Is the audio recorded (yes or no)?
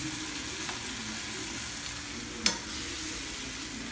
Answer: yes